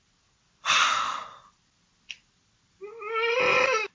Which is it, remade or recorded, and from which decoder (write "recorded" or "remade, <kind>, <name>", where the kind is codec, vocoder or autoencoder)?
recorded